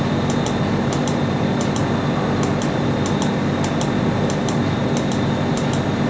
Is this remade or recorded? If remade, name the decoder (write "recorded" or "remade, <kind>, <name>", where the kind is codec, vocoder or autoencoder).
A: recorded